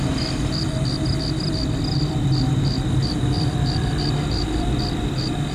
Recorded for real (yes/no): no